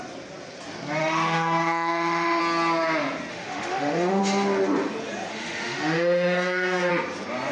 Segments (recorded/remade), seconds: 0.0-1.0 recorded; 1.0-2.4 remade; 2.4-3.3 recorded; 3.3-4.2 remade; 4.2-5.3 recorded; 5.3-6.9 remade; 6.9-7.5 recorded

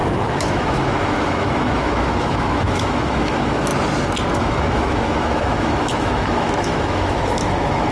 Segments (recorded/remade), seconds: 0.0-3.7 remade; 3.7-4.3 recorded; 4.3-7.9 remade